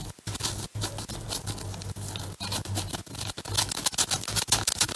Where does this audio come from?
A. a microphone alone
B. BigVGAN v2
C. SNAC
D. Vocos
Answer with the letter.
A